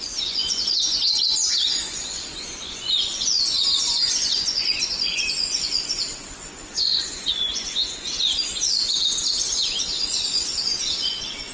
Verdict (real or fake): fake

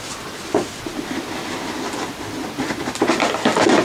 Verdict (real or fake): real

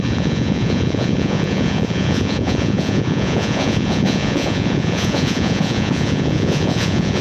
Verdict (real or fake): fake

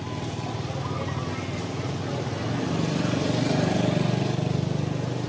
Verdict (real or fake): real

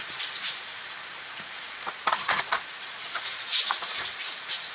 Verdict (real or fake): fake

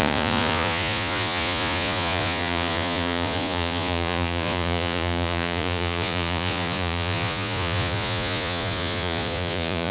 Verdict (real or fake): fake